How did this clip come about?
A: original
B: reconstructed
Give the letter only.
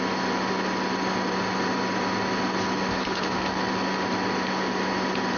A